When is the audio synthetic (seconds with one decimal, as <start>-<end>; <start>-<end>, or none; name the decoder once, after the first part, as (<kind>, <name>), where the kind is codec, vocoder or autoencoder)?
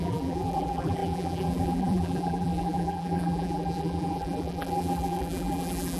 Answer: 0.0-6.0 (vocoder, BigVGAN v2)